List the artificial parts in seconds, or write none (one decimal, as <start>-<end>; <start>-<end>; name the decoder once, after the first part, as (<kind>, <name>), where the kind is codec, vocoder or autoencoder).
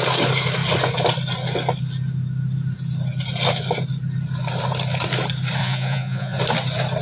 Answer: 5.6-6.4 (vocoder, Vocos)